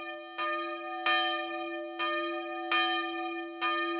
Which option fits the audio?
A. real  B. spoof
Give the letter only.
A